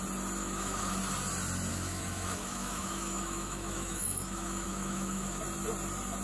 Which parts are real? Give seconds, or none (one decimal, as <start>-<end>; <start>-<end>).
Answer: 0.0-0.4; 0.9-1.7; 5.4-6.2